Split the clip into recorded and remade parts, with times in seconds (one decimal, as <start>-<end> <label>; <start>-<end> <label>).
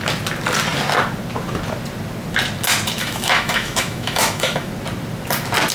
0.0-3.0 recorded; 3.0-4.7 remade; 4.7-5.7 recorded